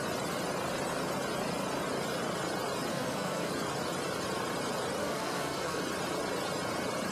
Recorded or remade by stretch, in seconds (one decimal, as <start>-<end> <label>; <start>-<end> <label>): 0.0-2.9 recorded; 2.9-3.5 remade; 3.5-5.0 recorded; 5.0-5.8 remade; 5.8-7.1 recorded